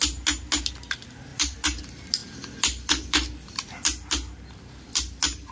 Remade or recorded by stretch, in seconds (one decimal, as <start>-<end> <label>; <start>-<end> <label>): 0.0-1.3 recorded; 1.3-1.8 remade; 1.8-5.5 recorded